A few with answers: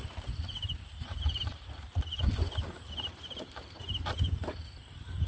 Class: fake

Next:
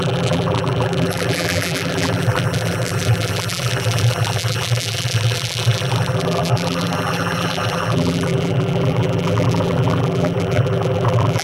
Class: fake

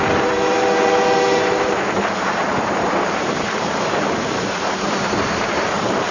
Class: fake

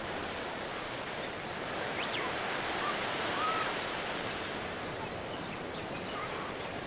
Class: fake